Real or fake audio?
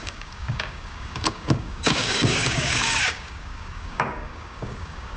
fake